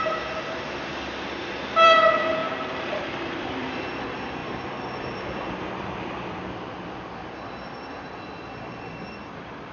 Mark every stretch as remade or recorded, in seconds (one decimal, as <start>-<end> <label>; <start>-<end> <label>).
0.0-9.7 remade